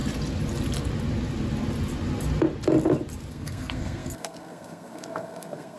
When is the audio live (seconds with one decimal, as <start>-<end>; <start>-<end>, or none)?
0.0-3.3